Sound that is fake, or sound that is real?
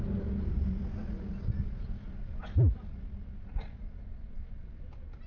real